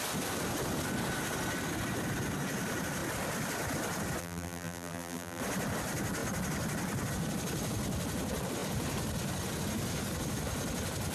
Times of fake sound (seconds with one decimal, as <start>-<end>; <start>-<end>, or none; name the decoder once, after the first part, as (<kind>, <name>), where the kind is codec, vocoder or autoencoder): 4.2-5.4 (vocoder, BigVGAN v2)